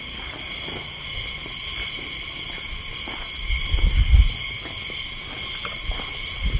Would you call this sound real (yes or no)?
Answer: yes